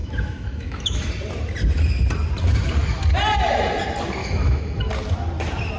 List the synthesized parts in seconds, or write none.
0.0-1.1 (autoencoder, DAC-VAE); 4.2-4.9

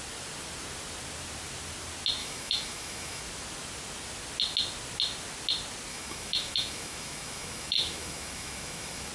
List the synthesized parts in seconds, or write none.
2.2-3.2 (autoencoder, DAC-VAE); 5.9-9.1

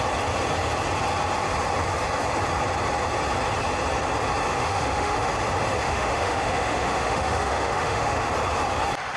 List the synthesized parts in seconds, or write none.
4.5-5.3 (autoencoder, DAC-VAE); 5.8-8.3

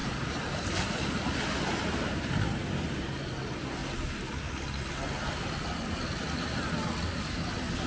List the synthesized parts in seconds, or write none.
none